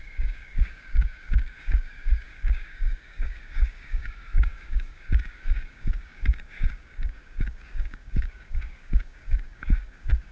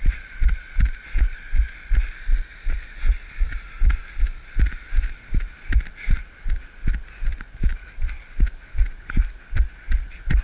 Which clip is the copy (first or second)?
first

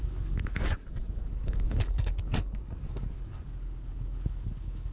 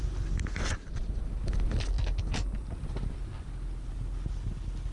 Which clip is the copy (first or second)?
first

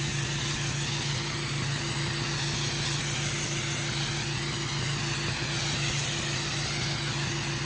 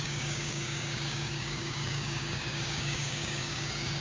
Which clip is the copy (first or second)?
second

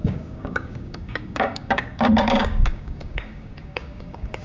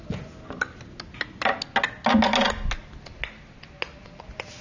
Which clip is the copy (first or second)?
first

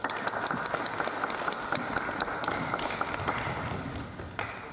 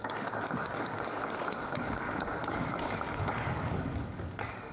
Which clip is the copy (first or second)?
second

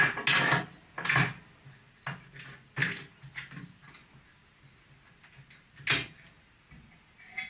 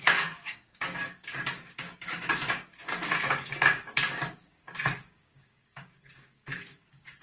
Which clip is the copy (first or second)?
second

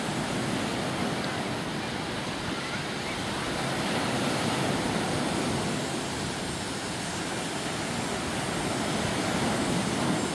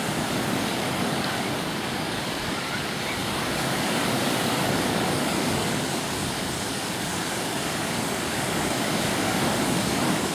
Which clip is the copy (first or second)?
second